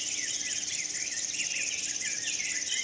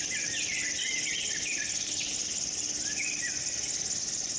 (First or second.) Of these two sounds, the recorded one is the first